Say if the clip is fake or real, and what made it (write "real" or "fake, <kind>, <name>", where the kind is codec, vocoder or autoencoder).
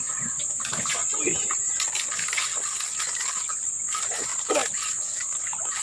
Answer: real